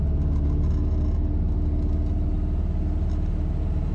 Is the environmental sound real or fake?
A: real